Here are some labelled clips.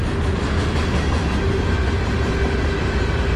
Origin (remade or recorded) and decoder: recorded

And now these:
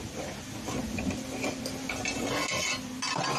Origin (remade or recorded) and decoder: recorded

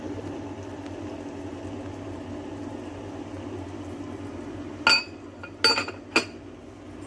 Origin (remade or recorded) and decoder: recorded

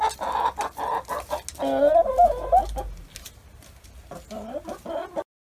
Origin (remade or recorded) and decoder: recorded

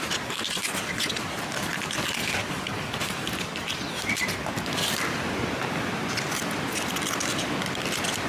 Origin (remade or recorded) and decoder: remade, vocoder, BigVGAN v2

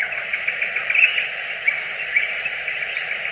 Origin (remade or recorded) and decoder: recorded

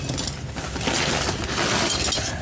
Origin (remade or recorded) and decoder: recorded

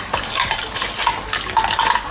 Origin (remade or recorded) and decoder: recorded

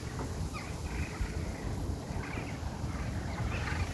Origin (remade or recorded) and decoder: recorded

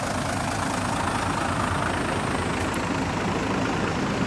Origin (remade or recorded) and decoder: recorded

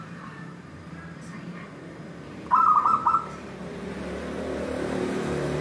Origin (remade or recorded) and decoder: remade, vocoder, BigVGAN v2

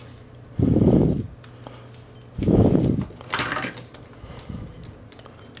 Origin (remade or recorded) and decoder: recorded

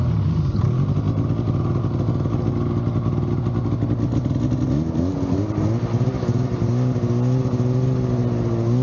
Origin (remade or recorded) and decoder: recorded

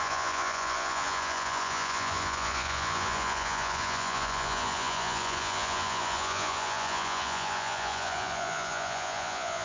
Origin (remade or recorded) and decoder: remade, vocoder, Vocos